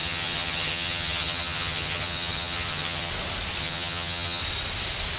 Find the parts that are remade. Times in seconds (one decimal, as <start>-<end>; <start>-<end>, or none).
0.0-3.1; 3.6-4.4